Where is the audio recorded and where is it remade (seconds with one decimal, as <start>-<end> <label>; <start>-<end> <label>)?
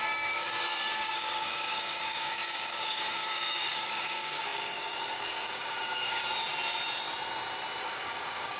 0.0-6.2 remade; 6.2-7.8 recorded; 7.8-8.6 remade